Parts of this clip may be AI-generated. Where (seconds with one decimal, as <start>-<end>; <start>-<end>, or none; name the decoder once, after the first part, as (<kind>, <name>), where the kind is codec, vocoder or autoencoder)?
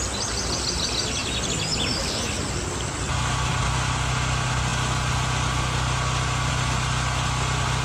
none